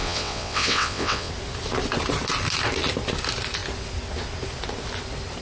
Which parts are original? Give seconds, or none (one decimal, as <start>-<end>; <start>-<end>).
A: 1.3-5.4